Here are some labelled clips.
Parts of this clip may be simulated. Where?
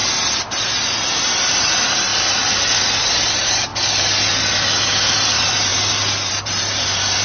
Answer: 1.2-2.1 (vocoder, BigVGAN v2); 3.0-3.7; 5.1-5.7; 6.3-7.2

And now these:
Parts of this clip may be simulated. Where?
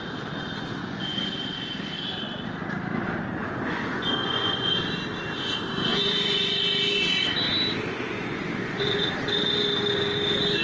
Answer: 0.8-1.3 (vocoder, Vocos); 3.4-4.7; 5.9-6.6; 7.9-9.1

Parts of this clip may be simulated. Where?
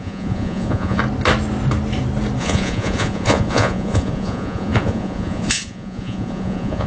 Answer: 0.0-1.0 (vocoder, Vocos); 2.4-6.9